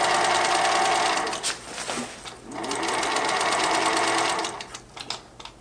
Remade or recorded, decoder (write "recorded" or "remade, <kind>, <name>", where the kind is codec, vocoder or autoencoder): recorded